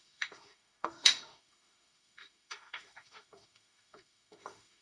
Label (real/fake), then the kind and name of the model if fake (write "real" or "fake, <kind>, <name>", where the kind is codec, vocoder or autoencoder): fake, autoencoder, DAC-VAE